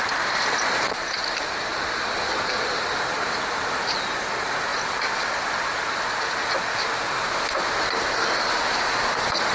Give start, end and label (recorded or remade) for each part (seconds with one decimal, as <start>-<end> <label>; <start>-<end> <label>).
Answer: 0.0-1.7 recorded; 1.7-2.3 remade; 2.3-4.7 recorded; 4.7-5.6 remade; 5.6-9.5 recorded

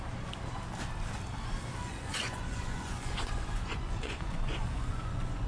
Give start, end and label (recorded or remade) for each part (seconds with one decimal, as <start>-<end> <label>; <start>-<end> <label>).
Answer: 0.0-1.9 recorded; 1.9-5.5 remade